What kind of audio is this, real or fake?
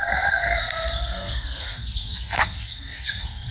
fake